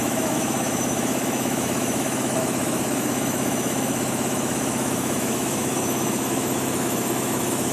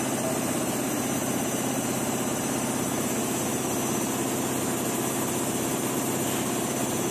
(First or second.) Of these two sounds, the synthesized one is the first